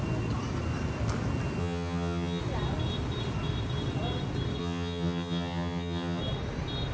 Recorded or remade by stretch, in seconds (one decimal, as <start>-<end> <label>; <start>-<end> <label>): 0.0-1.6 recorded; 1.6-2.4 remade; 2.4-4.6 recorded; 4.6-6.2 remade; 6.2-6.9 recorded